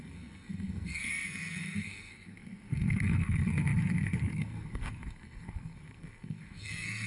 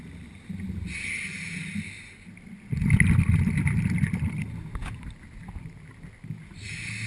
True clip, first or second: second